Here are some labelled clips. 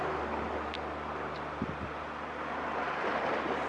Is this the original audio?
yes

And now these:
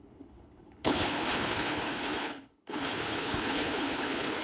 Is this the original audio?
no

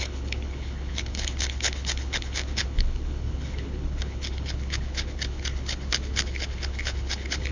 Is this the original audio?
no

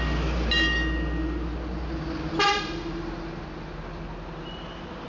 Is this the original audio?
yes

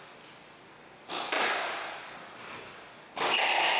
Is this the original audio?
yes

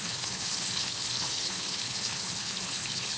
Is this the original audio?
no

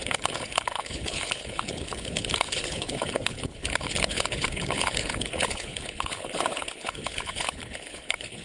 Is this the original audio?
no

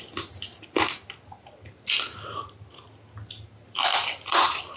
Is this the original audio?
yes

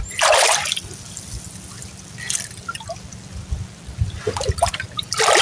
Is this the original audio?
yes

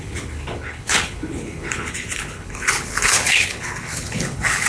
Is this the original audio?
no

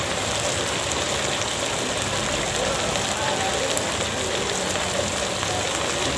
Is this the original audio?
yes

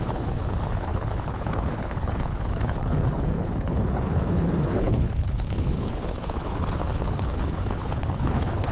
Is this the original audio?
no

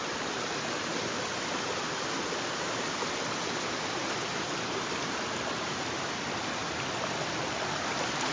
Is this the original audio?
yes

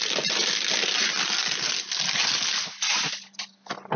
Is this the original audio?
yes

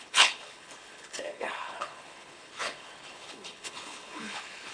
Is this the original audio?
no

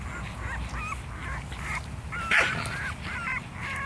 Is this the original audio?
yes